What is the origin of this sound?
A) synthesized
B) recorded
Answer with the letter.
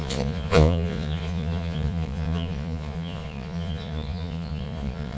A